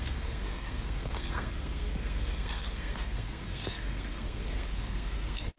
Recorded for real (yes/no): no